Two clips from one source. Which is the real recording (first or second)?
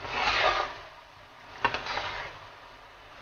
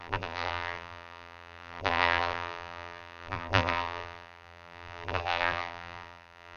first